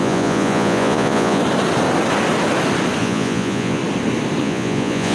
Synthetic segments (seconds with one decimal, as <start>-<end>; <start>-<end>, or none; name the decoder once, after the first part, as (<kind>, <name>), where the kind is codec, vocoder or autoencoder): 0.0-1.4 (vocoder, Vocos); 3.0-3.8; 4.4-5.1